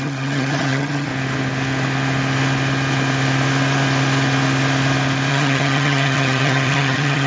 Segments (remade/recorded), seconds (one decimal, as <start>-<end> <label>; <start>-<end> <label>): 0.0-1.1 remade; 1.1-5.3 recorded; 5.3-7.3 remade